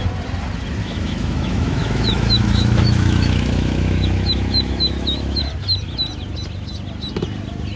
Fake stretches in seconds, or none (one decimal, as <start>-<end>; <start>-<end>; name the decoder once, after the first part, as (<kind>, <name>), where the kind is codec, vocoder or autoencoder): 0.8-5.4 (autoencoder, DAC-VAE)